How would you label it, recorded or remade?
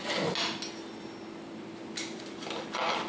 recorded